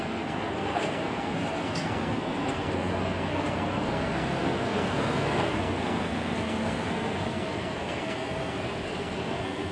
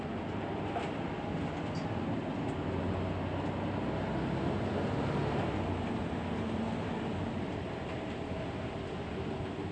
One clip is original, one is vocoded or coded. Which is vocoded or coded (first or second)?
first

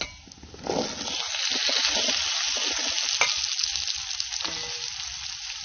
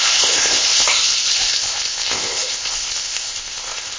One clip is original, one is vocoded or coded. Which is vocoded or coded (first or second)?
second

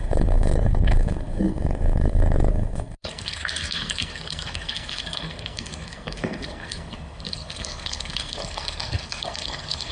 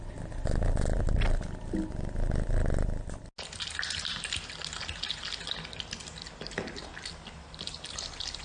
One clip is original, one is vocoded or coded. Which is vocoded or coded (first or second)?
first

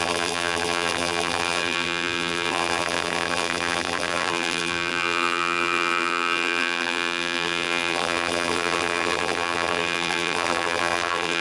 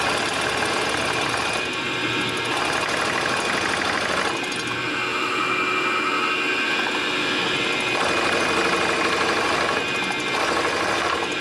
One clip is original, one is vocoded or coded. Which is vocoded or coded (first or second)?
first